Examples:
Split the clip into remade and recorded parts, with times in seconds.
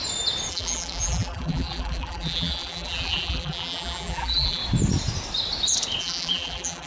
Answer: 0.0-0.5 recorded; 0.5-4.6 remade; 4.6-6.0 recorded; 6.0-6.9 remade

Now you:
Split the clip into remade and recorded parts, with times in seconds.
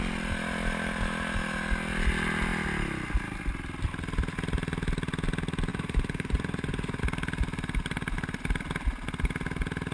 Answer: 0.0-5.7 recorded; 5.7-7.0 remade; 7.0-9.9 recorded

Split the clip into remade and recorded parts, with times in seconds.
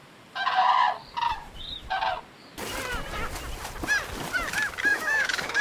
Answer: 0.0-4.9 recorded; 4.9-5.6 remade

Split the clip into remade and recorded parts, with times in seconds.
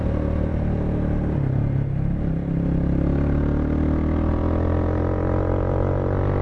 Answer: 0.0-6.4 recorded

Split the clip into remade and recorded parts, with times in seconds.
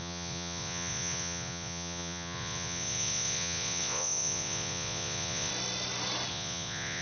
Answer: 0.0-5.5 remade; 5.5-6.3 recorded; 6.3-7.0 remade